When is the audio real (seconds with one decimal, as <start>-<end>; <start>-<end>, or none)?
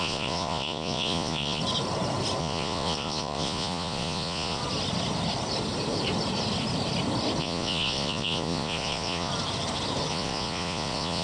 1.6-2.4; 4.6-7.4; 9.3-10.1